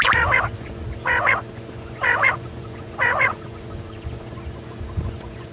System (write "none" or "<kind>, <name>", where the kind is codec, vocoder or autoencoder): vocoder, Vocos